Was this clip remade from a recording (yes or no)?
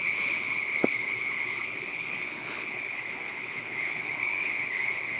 yes